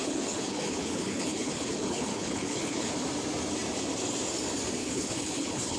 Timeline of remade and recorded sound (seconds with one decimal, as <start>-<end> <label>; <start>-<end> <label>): 0.0-2.9 remade; 2.9-4.8 recorded; 4.8-5.8 remade